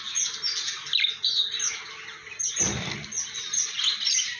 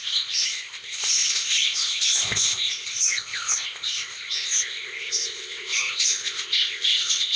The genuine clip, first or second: first